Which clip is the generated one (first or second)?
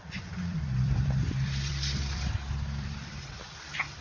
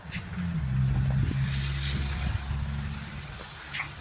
first